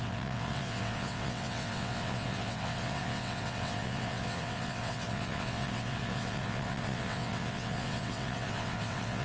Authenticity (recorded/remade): remade